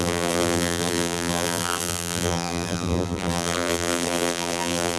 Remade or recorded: remade